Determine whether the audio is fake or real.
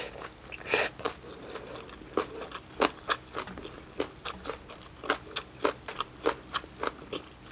real